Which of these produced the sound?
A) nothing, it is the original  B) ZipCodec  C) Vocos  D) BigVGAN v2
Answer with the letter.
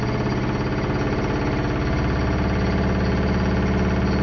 A